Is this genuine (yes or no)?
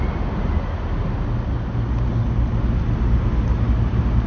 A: yes